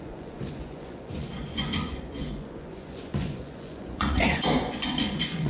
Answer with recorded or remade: remade